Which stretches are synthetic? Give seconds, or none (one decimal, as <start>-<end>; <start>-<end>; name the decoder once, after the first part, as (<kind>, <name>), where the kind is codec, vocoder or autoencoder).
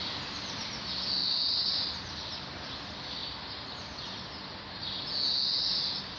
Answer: 1.2-2.5 (vocoder, BigVGAN v2); 3.2-5.0